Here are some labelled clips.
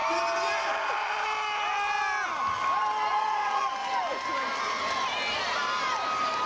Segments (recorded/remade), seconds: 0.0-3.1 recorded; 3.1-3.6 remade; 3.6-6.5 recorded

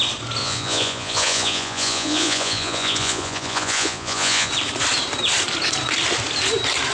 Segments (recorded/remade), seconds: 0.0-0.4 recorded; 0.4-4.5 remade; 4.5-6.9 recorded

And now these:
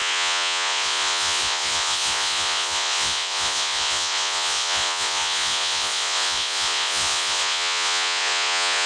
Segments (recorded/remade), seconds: 0.0-8.9 remade